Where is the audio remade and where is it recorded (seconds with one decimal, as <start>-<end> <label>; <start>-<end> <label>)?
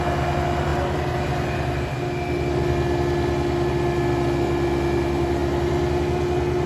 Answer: 0.0-6.7 recorded